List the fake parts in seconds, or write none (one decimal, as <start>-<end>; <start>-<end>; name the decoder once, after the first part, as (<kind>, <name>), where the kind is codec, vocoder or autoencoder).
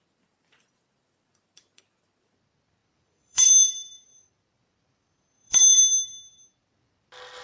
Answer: 0.0-5.8 (vocoder, BigVGAN v2); 6.6-7.4